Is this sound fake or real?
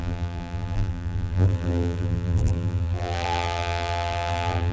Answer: fake